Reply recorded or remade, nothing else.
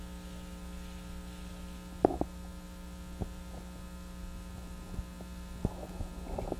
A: recorded